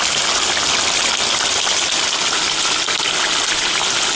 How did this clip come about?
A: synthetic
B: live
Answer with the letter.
B